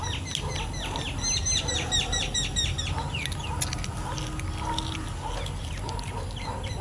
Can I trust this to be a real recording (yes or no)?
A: yes